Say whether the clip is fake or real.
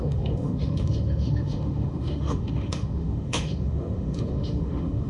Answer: fake